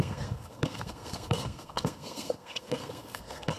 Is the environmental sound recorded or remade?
remade